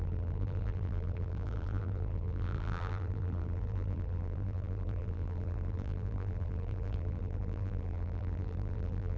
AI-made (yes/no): yes